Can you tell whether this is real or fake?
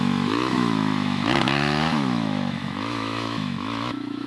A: fake